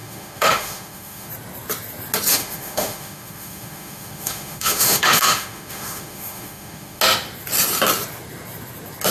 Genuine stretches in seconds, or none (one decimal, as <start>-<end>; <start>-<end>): 1.3-2.3; 7.0-9.1